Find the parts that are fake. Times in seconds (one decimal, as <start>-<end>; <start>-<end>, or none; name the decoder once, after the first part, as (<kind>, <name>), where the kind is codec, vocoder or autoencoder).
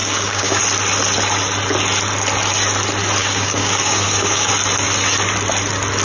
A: 0.0-0.6 (codec, DAC); 3.2-4.5